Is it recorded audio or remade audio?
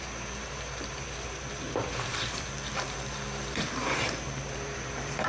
remade